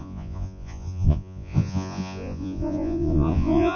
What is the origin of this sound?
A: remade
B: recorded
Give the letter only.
A